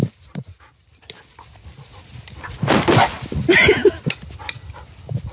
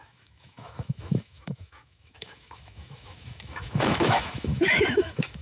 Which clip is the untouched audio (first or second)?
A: first